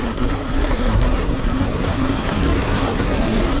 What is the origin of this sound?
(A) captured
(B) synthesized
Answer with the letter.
B